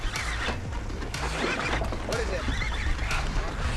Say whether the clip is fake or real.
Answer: real